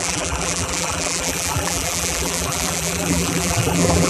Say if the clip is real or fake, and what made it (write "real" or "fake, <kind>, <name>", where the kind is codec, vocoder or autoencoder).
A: fake, vocoder, BigVGAN v2